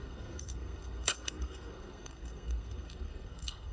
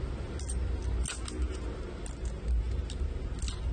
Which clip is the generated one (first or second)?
first